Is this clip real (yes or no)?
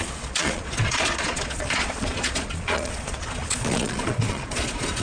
no